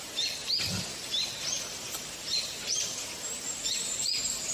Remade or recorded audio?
recorded